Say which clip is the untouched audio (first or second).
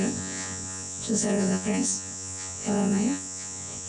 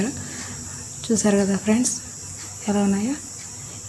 second